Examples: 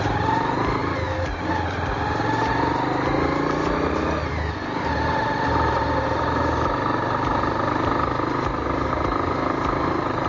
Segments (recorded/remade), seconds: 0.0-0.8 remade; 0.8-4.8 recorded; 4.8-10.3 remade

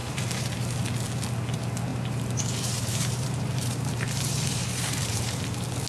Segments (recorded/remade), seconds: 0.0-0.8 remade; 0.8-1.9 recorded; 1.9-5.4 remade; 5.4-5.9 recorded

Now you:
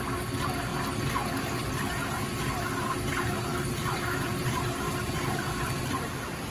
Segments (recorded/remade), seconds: 0.0-3.5 recorded; 3.5-6.5 remade